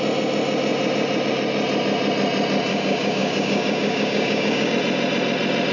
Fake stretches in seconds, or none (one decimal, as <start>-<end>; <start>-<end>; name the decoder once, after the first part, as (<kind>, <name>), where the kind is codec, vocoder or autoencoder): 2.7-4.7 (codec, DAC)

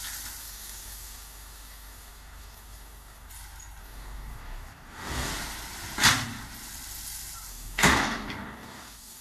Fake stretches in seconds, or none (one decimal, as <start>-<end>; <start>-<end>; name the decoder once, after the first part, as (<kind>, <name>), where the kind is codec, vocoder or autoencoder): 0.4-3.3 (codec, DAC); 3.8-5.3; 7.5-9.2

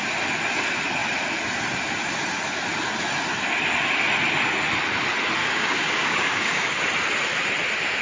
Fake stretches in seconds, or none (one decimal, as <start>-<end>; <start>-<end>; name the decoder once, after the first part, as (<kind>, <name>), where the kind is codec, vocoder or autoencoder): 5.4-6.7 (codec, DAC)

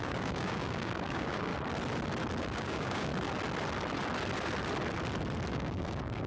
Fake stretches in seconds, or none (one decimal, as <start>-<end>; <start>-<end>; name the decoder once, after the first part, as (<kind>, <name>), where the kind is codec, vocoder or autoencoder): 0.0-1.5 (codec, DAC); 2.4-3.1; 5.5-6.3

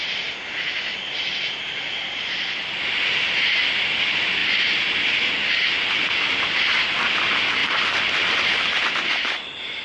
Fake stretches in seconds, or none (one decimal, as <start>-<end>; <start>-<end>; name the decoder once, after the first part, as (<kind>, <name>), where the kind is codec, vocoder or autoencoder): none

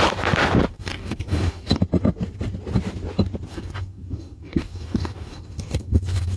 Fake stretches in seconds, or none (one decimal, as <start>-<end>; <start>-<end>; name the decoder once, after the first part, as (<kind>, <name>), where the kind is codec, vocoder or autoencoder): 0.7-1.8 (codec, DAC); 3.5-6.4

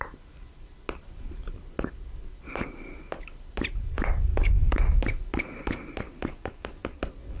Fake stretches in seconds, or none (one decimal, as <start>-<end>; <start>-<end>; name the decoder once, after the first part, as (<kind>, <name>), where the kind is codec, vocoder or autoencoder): 4.3-5.0 (codec, DAC); 6.3-7.0